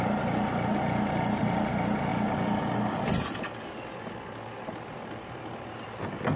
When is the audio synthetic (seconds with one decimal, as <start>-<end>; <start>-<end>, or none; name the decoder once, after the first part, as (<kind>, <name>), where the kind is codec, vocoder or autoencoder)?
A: none